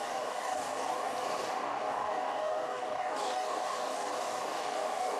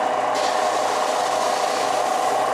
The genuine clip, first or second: second